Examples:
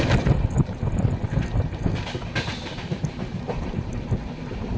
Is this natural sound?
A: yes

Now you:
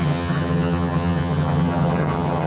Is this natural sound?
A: no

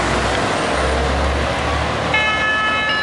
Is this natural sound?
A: yes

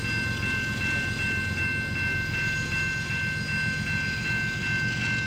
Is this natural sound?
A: yes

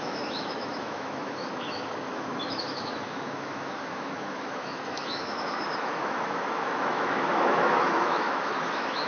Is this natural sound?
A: no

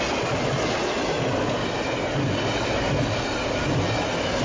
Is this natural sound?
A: yes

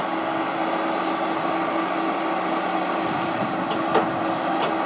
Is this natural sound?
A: yes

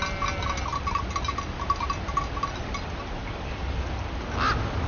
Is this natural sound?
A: yes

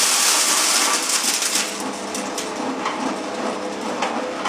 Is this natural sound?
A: yes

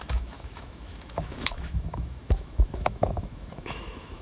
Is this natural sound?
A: no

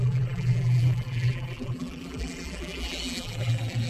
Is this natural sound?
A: no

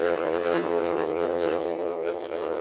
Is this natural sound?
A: no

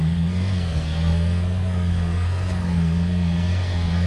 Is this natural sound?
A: no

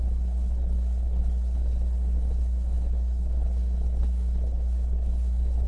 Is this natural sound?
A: no